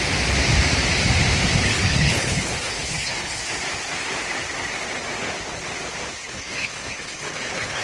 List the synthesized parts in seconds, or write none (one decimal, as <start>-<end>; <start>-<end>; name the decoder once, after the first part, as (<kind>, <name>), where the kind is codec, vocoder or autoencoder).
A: 1.7-3.4 (codec, HILCodec); 6.2-7.8